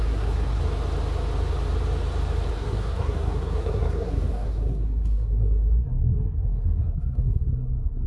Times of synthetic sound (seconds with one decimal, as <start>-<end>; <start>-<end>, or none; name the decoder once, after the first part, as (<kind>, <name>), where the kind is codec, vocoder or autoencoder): 0.0-0.6 (codec, SNAC); 2.5-8.1